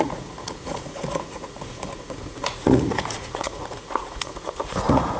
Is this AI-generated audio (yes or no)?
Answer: yes